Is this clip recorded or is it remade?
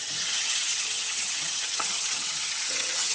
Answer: remade